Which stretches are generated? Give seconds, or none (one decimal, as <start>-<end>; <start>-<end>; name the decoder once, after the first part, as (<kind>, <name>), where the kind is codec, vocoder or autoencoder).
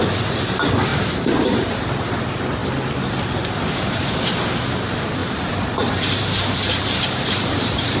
0.9-2.1 (vocoder, BigVGAN v2); 5.2-8.0